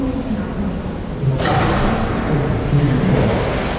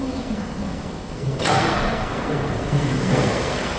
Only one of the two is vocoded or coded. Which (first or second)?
second